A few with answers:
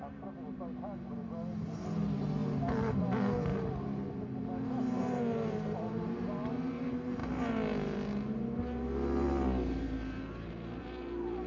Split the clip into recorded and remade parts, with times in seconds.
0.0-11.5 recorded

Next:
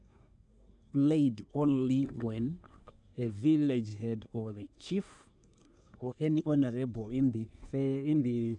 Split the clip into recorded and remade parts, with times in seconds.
0.0-8.6 remade

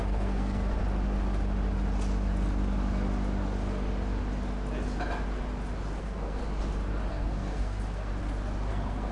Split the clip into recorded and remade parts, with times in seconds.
0.0-0.8 remade; 0.8-6.0 recorded; 6.0-6.4 remade; 6.4-7.1 recorded; 7.1-8.1 remade; 8.1-8.7 recorded; 8.7-9.1 remade

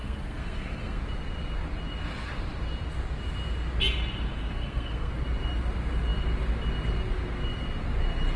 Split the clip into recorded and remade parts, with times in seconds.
0.0-1.0 remade; 1.0-4.4 recorded; 4.4-5.1 remade; 5.1-8.4 recorded

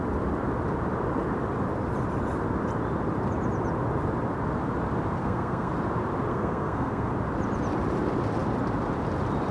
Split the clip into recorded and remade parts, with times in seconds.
0.0-5.2 recorded; 5.2-5.7 remade; 5.7-6.3 recorded; 6.3-7.1 remade; 7.1-9.5 recorded

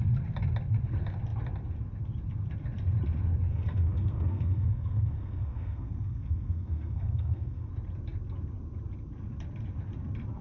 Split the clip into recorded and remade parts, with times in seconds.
0.0-3.5 recorded; 3.5-7.7 remade; 7.7-10.4 recorded

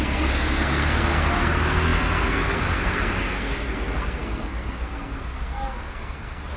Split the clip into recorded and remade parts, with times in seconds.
0.0-6.6 remade